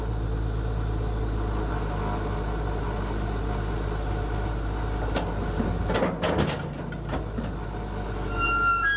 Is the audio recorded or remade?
recorded